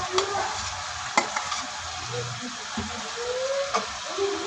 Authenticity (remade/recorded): recorded